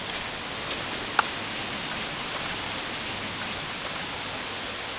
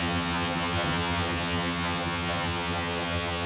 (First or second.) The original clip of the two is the first